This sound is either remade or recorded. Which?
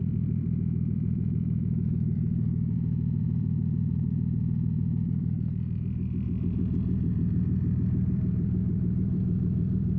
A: remade